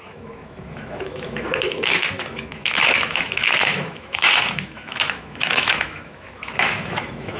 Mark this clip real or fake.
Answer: fake